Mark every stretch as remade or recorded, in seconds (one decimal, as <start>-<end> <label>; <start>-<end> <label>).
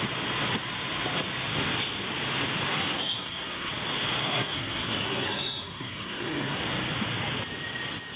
0.0-2.7 recorded; 2.7-3.7 remade; 3.7-4.2 recorded; 4.2-6.6 remade; 6.6-8.2 recorded